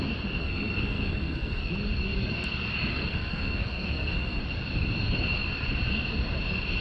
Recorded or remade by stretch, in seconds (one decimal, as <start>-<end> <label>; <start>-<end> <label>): 0.0-0.4 recorded; 0.4-1.7 remade; 1.7-2.9 recorded; 2.9-4.4 remade; 4.4-6.8 recorded